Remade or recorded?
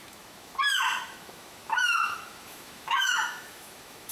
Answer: remade